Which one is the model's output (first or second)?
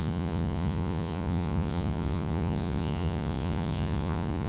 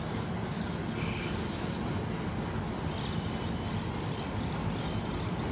first